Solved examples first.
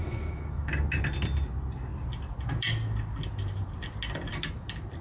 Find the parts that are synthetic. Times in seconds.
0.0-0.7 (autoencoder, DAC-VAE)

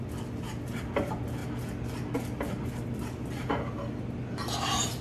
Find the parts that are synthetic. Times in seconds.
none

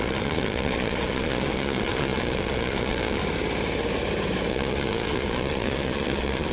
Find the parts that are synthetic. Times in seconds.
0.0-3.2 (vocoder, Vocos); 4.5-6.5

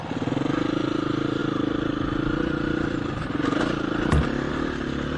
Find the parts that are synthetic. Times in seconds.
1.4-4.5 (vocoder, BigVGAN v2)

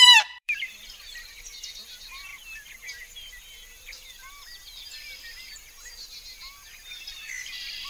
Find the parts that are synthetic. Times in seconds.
0.0-2.3 (vocoder, BigVGAN v2); 6.7-7.9

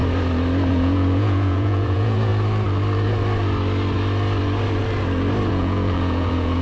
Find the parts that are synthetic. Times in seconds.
0.7-2.3 (vocoder, Vocos); 5.5-6.6

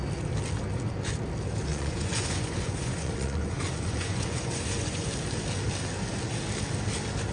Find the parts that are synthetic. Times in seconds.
1.7-5.1 (vocoder, Vocos)

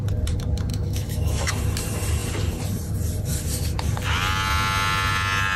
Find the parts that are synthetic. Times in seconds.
0.7-1.5 (autoencoder, DAC-VAE)